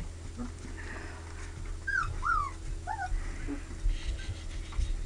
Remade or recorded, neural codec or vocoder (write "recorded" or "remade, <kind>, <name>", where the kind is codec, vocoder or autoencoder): recorded